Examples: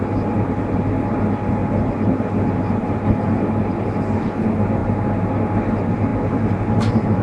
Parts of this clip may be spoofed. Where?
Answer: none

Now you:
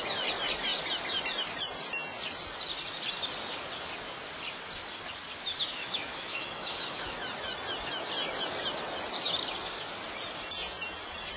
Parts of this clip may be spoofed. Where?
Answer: 5.8-7.2 (autoencoder, DAC-VAE)

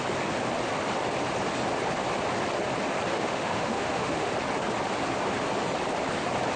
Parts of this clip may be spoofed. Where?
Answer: 3.1-4.3 (autoencoder, DAC-VAE)

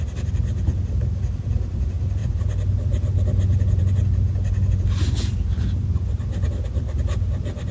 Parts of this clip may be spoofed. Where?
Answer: none